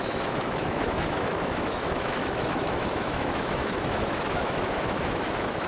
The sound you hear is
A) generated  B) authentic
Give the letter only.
A